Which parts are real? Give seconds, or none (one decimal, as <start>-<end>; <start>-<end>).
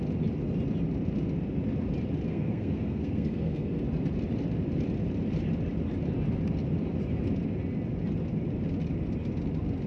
0.0-2.3; 3.8-9.9